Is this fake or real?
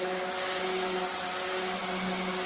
real